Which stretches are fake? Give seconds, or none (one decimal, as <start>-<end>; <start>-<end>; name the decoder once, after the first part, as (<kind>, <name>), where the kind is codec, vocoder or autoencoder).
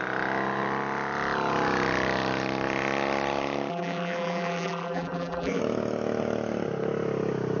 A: 3.7-5.6 (vocoder, BigVGAN v2)